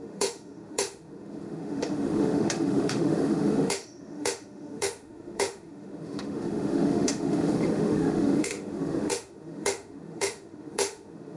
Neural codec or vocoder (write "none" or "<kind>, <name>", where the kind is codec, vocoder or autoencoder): autoencoder, DAC-VAE